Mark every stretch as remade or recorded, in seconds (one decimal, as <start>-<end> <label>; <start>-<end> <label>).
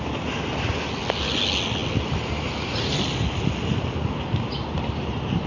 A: 0.0-5.5 recorded